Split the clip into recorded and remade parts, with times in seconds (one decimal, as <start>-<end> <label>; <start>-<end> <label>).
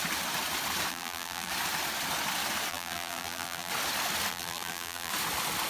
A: 0.0-0.9 recorded; 0.9-1.5 remade; 1.5-2.7 recorded; 2.7-3.7 remade; 3.7-4.3 recorded; 4.3-5.1 remade; 5.1-5.7 recorded